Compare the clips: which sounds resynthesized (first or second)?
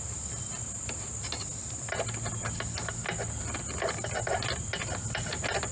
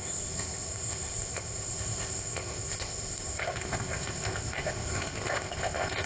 second